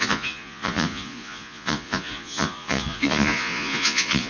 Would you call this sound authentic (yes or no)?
no